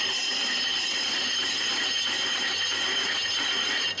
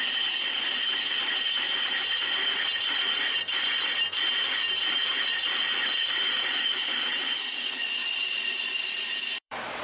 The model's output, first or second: second